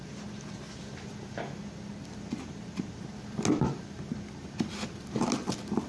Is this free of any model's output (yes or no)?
yes